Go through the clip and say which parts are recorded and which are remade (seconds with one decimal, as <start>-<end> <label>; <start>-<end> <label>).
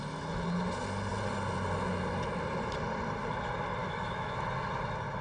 0.0-3.8 recorded; 3.8-4.4 remade; 4.4-5.2 recorded